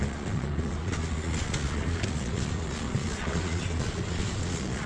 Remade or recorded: remade